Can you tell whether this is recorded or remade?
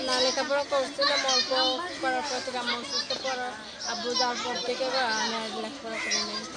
recorded